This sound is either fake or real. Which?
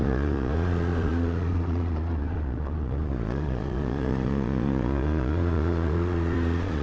fake